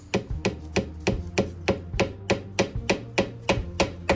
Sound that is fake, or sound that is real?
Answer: real